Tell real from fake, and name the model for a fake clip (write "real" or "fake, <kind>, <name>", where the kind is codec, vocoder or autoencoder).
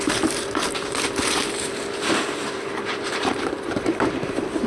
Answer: fake, vocoder, BigVGAN v2